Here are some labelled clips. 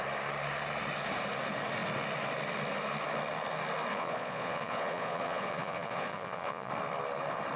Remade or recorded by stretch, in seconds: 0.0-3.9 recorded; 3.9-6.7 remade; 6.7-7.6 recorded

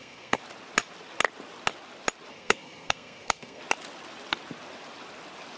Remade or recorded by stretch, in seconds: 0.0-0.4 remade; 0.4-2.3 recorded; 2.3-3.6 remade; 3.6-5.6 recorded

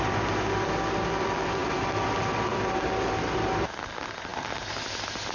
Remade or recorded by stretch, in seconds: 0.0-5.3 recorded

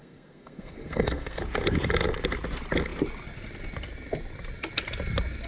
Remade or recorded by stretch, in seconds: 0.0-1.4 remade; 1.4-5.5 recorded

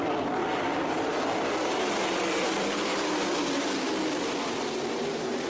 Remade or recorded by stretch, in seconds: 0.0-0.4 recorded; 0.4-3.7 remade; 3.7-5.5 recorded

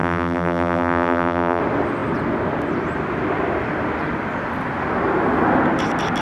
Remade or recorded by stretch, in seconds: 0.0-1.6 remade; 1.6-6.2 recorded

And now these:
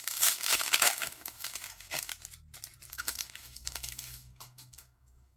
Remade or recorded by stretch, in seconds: 0.0-2.1 remade; 2.1-2.9 recorded; 2.9-5.4 remade